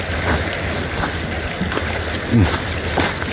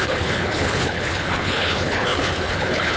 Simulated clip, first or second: second